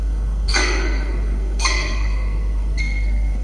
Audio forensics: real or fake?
fake